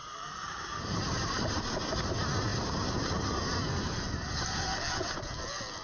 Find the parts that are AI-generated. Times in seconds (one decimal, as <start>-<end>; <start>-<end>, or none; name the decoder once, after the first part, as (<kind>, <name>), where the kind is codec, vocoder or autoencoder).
0.0-1.6 (vocoder, BigVGAN v2)